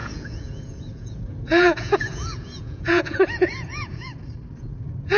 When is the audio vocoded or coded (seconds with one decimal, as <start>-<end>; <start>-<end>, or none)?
0.0-4.1; 4.6-5.2